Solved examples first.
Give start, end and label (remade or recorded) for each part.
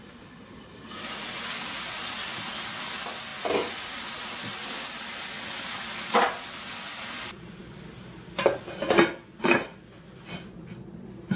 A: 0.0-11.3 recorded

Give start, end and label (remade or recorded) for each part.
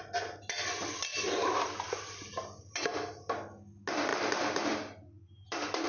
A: 0.0-1.1 recorded; 1.1-2.8 remade; 2.8-4.1 recorded; 4.1-5.9 remade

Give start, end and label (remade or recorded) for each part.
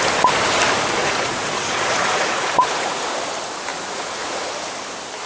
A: 0.0-1.0 recorded; 1.0-3.0 remade; 3.0-3.7 recorded; 3.7-4.5 remade; 4.5-5.3 recorded